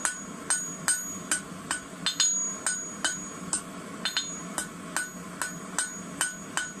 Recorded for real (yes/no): yes